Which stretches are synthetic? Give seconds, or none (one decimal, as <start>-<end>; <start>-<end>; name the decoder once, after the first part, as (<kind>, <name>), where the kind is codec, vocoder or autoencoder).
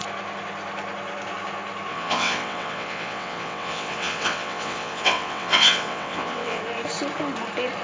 1.9-6.6 (vocoder, WaveNeXt)